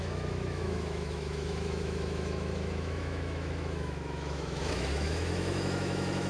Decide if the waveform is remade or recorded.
remade